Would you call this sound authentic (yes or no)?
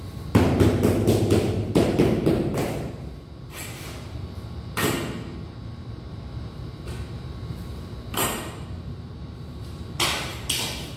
no